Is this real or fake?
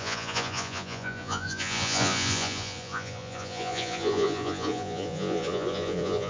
fake